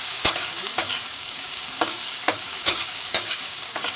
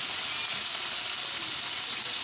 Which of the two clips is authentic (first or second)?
second